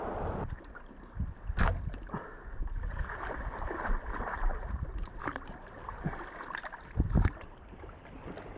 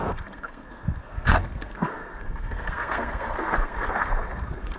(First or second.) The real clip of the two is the first